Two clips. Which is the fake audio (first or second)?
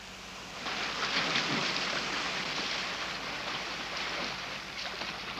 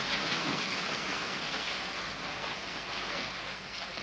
second